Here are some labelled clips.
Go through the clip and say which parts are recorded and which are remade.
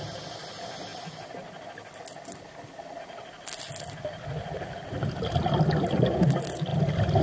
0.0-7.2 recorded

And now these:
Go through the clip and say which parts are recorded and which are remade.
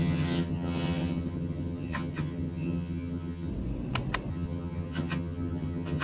0.0-3.5 remade; 3.5-4.3 recorded; 4.3-6.0 remade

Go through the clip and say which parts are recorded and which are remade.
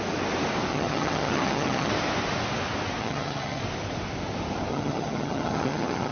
0.0-0.7 recorded; 0.7-1.9 remade; 1.9-3.0 recorded; 3.0-3.6 remade; 3.6-4.7 recorded; 4.7-6.1 remade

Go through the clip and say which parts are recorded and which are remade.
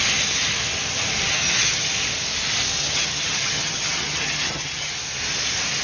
0.0-1.3 recorded; 1.3-1.9 remade; 1.9-2.8 recorded; 2.8-4.9 remade; 4.9-5.8 recorded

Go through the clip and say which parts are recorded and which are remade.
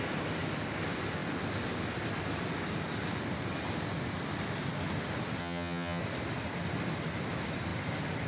0.0-5.4 recorded; 5.4-6.0 remade; 6.0-8.3 recorded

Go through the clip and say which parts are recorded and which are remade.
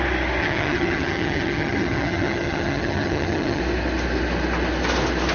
0.0-0.4 recorded; 0.4-3.6 remade; 3.6-5.3 recorded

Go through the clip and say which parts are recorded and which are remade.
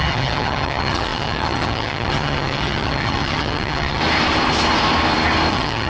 0.0-4.0 remade; 4.0-5.5 recorded; 5.5-5.9 remade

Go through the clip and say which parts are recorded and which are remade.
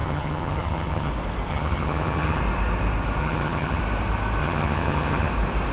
0.0-1.1 remade; 1.1-1.5 recorded; 1.5-2.4 remade; 2.4-3.2 recorded; 3.2-3.8 remade; 3.8-4.4 recorded; 4.4-5.3 remade; 5.3-5.7 recorded